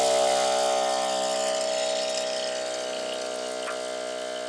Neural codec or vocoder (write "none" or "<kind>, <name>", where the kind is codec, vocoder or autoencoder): none